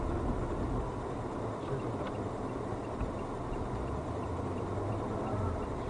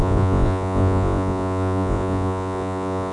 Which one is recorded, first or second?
first